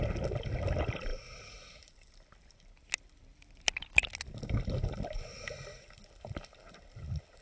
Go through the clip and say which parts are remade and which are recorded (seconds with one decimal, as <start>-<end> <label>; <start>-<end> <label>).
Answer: 0.0-7.4 recorded